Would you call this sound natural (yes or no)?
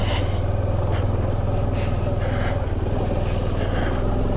yes